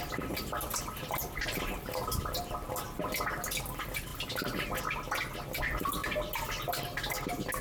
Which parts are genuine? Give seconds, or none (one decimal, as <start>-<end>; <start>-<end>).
0.0-7.6